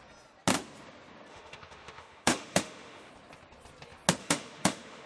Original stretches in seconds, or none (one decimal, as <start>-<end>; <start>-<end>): 0.0-1.3; 3.1-4.2